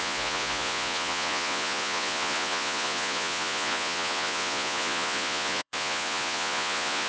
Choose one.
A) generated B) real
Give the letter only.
A